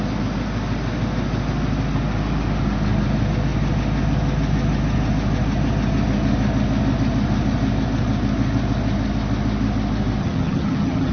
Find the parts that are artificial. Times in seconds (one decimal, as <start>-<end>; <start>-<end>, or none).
10.2-11.1